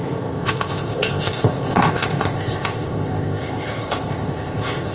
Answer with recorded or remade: remade